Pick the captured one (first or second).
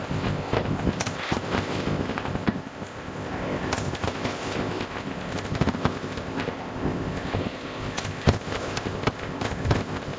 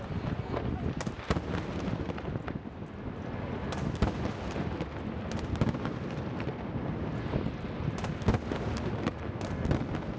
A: second